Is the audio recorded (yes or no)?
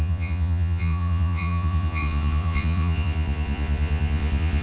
no